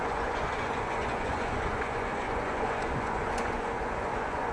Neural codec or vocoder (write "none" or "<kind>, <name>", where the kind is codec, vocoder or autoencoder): vocoder, Vocos